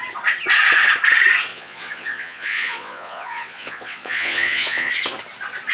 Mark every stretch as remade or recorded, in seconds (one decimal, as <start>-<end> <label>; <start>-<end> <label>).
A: 0.0-1.5 recorded; 1.5-4.9 remade; 4.9-5.7 recorded